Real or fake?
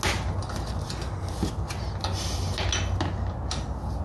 real